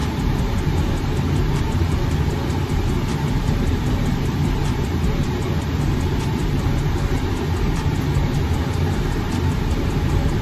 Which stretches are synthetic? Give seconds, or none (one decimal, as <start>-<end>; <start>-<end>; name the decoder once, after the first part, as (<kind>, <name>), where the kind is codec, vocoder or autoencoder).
0.0-10.4 (vocoder, BigVGAN v2)

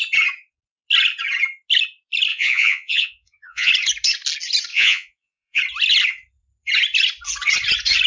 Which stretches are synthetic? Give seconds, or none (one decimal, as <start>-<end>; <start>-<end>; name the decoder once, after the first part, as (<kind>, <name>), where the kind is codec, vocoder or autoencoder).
2.3-3.7 (vocoder, Vocos); 4.7-5.6

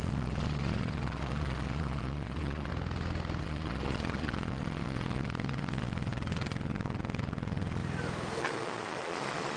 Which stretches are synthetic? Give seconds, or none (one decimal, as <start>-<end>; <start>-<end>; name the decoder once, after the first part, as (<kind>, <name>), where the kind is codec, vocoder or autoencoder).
0.0-2.7 (vocoder, Vocos); 3.4-7.8; 8.4-9.6